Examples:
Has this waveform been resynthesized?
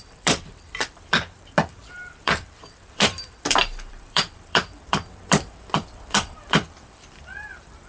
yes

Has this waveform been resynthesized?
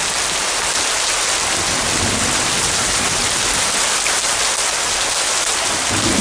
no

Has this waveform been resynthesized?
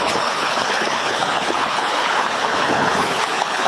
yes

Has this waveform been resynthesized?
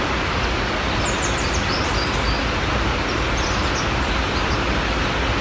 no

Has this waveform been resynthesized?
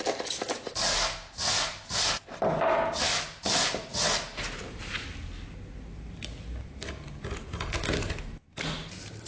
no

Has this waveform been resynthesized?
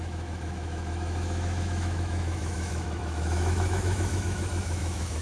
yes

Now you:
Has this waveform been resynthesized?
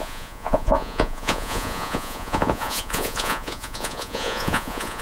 yes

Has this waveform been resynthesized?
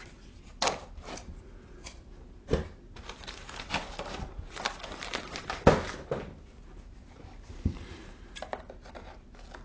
no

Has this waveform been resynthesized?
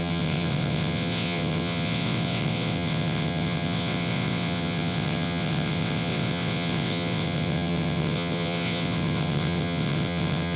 yes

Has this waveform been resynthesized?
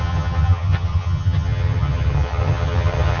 yes